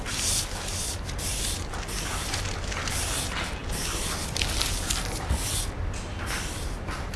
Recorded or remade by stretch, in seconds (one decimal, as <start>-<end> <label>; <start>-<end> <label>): 0.0-7.2 recorded